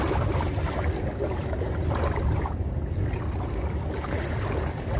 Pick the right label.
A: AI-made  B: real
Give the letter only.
B